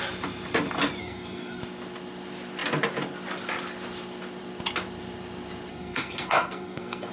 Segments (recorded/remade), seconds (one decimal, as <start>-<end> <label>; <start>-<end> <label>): 0.0-1.0 recorded; 1.0-1.6 remade; 1.6-5.7 recorded; 5.7-7.1 remade